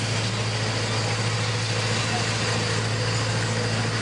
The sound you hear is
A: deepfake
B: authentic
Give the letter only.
B